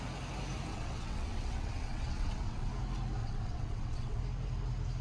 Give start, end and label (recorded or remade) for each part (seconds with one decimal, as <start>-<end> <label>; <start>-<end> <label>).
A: 0.0-0.7 recorded; 0.7-2.7 remade; 2.7-3.2 recorded; 3.2-4.2 remade; 4.2-5.0 recorded